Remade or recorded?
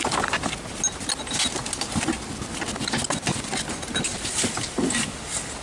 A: recorded